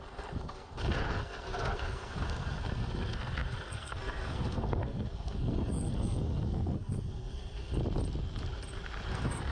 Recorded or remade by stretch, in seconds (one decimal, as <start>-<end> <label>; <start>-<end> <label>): 0.0-7.8 remade; 7.8-9.1 recorded; 9.1-9.5 remade